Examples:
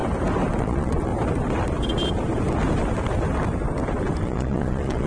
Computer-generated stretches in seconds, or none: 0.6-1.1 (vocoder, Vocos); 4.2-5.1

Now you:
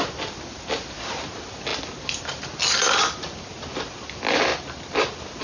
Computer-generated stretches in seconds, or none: none

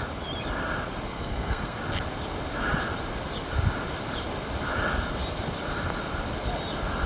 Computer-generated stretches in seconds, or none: 1.1-1.8 (codec, SNAC)

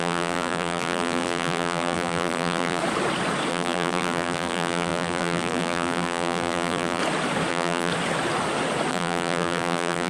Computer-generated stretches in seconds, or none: 0.0-2.8 (vocoder, BigVGAN v2); 3.5-7.0; 7.5-7.9; 8.9-10.1